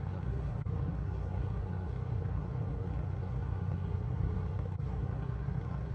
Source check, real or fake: fake